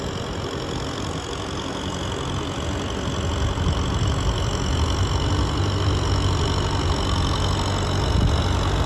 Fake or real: real